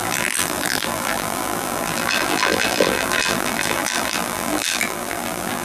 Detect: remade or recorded remade